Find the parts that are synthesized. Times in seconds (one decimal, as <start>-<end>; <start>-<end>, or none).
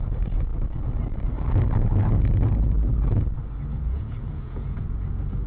0.0-0.5; 3.8-5.5